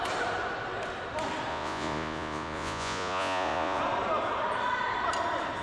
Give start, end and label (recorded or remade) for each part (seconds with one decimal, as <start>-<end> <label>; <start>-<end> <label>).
0.0-1.5 recorded; 1.5-3.8 remade; 3.8-5.6 recorded